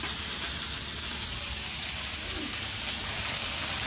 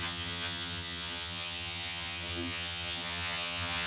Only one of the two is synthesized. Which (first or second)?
second